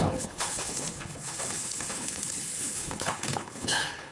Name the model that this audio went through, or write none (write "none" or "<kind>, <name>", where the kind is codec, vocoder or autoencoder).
codec, HILCodec